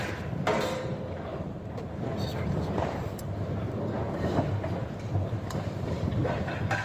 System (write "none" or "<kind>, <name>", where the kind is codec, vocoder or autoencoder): vocoder, BigVGAN v2